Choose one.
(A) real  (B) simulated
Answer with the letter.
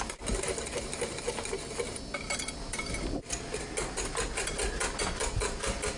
A